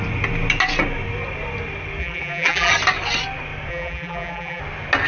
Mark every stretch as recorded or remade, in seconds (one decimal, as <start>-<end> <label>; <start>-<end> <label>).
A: 0.0-2.0 recorded; 2.0-2.7 remade; 2.7-3.7 recorded; 3.7-4.6 remade; 4.6-5.1 recorded